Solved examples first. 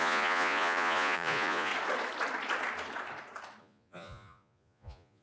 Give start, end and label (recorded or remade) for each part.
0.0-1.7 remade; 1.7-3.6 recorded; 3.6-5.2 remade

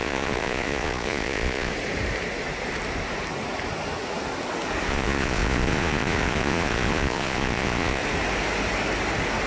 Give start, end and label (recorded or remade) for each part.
0.0-1.7 remade; 1.7-4.9 recorded; 4.9-8.0 remade; 8.0-9.5 recorded